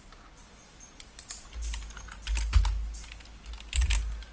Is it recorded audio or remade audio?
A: recorded